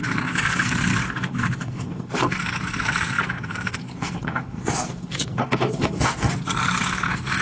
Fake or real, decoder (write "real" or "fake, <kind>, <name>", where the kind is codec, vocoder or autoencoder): fake, codec, SNAC